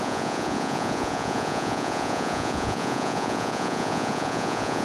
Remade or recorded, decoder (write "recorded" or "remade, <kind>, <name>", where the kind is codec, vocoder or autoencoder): remade, vocoder, Vocos